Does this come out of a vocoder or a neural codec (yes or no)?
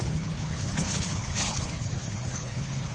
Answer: yes